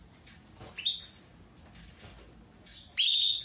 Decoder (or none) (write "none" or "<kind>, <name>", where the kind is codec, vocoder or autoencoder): none